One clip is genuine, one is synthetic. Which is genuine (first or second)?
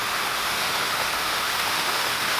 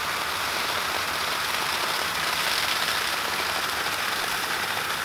second